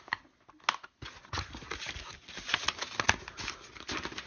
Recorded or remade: recorded